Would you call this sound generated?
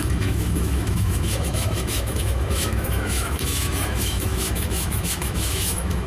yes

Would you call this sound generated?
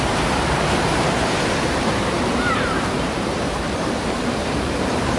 yes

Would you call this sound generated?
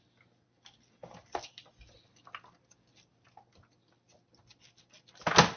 no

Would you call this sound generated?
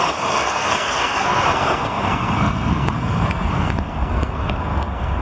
yes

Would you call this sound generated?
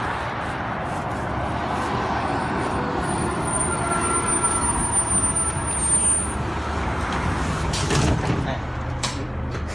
no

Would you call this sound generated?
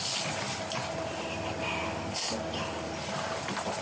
no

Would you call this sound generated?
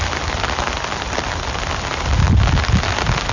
no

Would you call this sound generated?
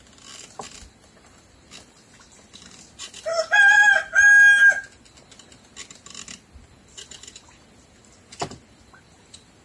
no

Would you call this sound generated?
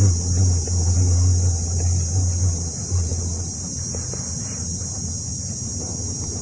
no